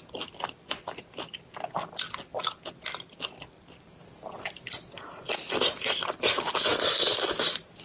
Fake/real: real